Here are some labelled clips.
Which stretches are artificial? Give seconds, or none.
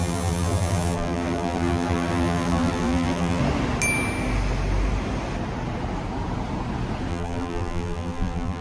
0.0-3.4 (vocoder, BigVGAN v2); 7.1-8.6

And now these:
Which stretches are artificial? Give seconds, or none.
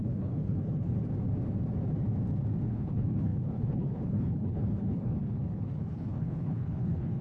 0.0-1.0 (codec, HILCodec); 2.7-7.2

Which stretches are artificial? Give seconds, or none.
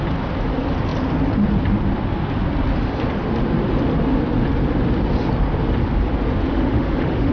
6.5-7.3 (autoencoder, DAC-VAE)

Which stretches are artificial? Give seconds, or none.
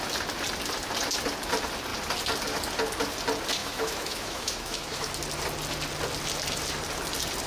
3.6-5.1 (autoencoder, DAC-VAE)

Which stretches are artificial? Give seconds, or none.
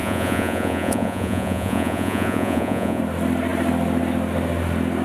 0.0-3.0 (vocoder, Vocos)